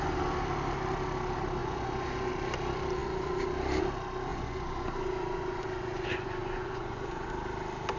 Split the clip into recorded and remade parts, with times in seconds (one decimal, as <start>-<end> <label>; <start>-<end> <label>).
0.0-1.6 recorded; 1.6-2.3 remade; 2.3-4.3 recorded; 4.3-7.3 remade; 7.3-8.0 recorded